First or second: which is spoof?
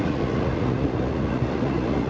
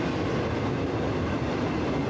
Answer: first